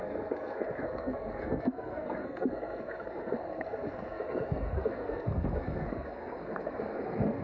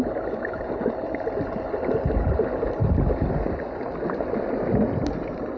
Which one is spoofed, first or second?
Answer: first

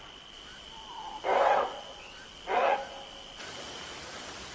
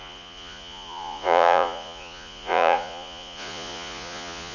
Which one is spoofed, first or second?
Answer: second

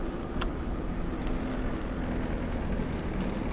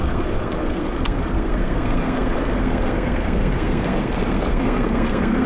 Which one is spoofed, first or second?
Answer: second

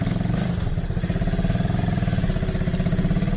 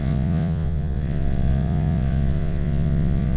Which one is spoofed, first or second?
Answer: second